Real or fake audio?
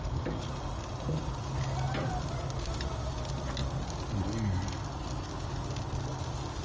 real